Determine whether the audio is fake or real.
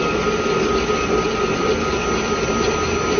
real